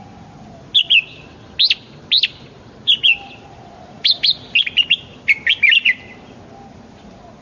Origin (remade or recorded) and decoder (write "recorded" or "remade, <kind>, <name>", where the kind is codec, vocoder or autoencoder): recorded